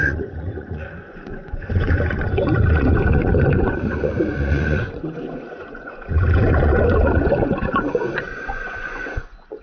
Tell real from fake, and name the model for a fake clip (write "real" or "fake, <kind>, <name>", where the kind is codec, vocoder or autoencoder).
fake, vocoder, Vocos